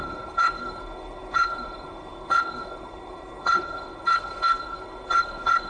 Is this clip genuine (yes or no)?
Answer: no